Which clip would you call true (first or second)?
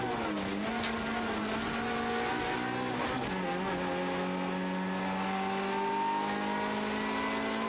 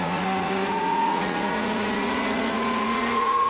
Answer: first